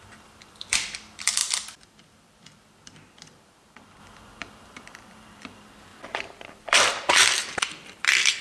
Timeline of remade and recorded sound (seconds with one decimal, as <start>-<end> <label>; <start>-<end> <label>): 0.0-8.4 remade